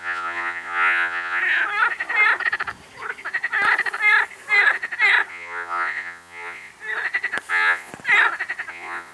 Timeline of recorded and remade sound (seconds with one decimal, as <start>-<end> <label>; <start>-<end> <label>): 0.0-1.4 remade; 1.4-5.3 recorded; 5.3-6.7 remade; 6.7-7.5 recorded; 7.5-7.9 remade; 7.9-8.7 recorded; 8.7-9.1 remade